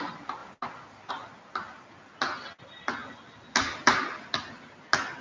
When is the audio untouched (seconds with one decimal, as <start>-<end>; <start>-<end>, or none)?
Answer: 0.0-5.2